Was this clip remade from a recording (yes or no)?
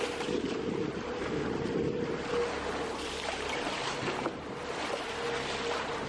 no